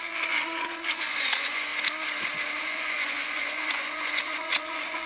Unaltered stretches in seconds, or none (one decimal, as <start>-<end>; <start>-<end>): 1.7-2.6